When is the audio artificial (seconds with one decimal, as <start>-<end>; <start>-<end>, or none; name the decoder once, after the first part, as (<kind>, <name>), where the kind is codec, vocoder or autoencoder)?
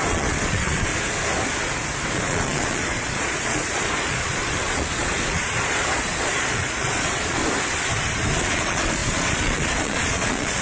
0.0-0.9 (vocoder, Vocos); 2.1-7.4; 8.4-10.6